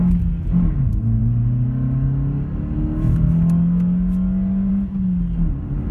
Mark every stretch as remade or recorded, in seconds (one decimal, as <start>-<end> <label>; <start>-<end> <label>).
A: 0.0-5.9 recorded